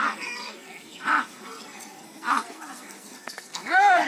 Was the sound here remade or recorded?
remade